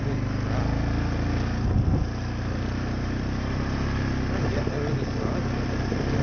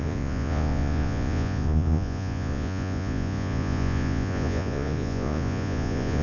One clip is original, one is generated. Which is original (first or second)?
first